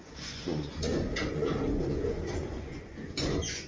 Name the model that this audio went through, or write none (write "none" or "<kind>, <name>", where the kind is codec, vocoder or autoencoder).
vocoder, Vocos